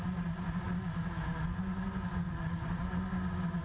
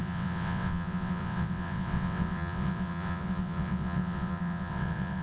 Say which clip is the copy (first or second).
second